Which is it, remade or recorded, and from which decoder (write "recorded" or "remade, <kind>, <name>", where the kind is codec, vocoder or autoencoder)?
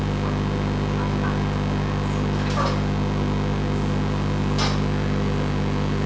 recorded